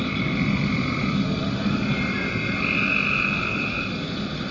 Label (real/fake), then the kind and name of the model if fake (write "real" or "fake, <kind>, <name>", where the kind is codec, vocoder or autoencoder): real